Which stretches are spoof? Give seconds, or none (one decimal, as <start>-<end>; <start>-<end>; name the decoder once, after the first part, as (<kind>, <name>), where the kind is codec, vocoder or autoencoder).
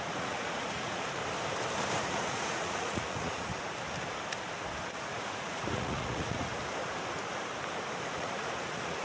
0.0-1.2 (vocoder, Vocos); 2.0-3.5; 4.8-6.5; 8.1-9.0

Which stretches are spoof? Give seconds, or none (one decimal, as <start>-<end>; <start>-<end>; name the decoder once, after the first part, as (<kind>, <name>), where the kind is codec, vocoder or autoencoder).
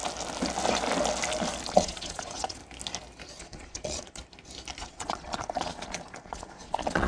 1.7-2.6 (vocoder, Vocos); 3.4-4.2; 4.8-7.1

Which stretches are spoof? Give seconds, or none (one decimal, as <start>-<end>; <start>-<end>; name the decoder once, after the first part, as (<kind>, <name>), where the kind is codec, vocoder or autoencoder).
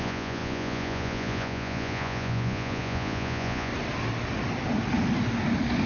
0.0-3.7 (vocoder, Vocos)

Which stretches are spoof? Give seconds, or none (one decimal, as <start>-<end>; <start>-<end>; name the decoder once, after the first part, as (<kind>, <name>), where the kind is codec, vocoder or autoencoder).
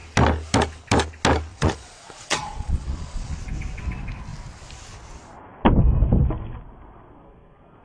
1.5-3.4 (vocoder, Vocos)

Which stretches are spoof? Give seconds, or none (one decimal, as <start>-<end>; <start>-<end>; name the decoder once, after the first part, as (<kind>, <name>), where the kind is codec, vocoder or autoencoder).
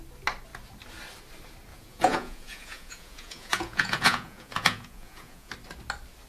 1.7-5.5 (vocoder, Vocos)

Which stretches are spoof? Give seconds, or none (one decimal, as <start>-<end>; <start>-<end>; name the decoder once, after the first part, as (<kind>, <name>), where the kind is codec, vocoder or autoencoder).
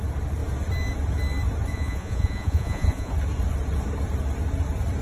1.7-3.1 (vocoder, Vocos)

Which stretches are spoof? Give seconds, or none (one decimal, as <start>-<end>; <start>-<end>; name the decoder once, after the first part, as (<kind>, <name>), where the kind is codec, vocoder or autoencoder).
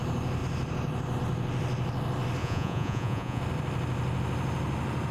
2.4-3.4 (vocoder, Vocos)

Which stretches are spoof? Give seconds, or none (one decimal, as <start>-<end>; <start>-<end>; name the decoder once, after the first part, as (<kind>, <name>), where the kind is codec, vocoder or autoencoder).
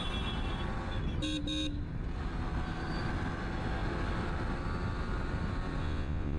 5.8-6.4 (vocoder, Vocos)